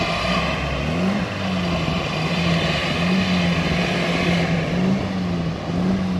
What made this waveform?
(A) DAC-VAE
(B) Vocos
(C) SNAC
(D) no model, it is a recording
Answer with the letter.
D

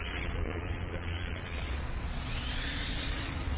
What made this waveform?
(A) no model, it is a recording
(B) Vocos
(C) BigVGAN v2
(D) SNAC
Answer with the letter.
B